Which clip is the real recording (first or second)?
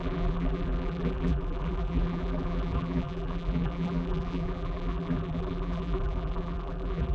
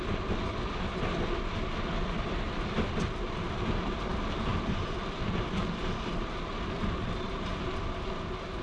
second